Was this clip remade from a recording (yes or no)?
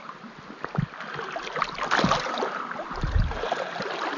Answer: no